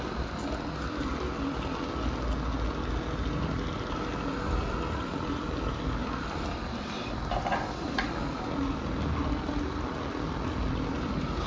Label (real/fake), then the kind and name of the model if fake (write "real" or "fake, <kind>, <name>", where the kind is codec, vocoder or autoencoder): real